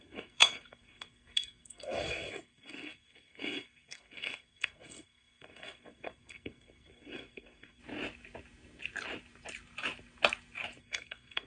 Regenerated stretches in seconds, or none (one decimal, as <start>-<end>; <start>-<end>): 0.0-7.8; 10.8-11.5